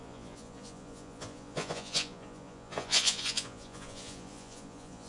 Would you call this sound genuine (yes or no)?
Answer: no